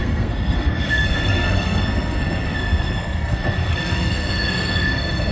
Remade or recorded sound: remade